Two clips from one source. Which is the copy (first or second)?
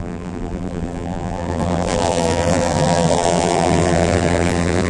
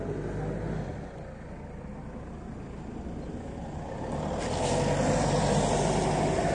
first